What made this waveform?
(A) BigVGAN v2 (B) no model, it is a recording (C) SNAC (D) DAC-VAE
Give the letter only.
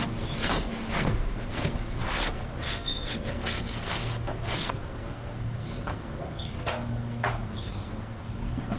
C